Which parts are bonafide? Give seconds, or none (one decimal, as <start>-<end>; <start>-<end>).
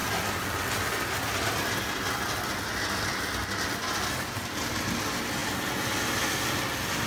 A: 0.0-7.1